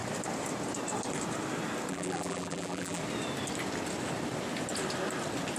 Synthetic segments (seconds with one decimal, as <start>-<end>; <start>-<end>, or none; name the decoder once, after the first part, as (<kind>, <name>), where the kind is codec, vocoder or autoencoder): 1.9-3.0 (vocoder, BigVGAN v2)